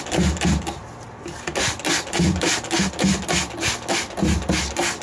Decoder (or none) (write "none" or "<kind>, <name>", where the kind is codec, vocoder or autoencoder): none